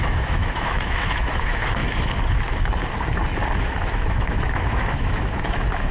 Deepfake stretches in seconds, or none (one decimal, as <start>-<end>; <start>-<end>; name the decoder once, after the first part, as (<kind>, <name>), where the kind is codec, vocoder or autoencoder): 0.0-1.8 (autoencoder, DAC-VAE); 3.6-5.9